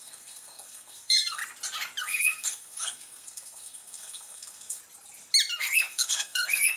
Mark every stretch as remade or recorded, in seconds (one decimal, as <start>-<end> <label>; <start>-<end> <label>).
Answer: 0.0-1.4 remade; 1.4-2.0 recorded; 2.0-4.8 remade; 4.8-5.6 recorded; 5.6-6.8 remade